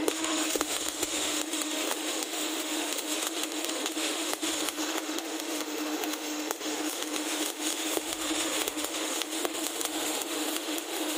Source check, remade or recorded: remade